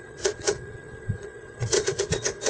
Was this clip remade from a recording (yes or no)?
yes